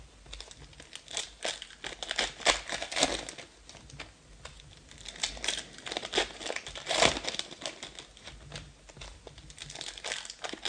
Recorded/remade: recorded